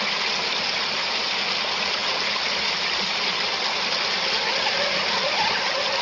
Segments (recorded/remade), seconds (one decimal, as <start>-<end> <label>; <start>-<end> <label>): 0.0-2.0 recorded; 2.0-2.6 remade; 2.6-6.0 recorded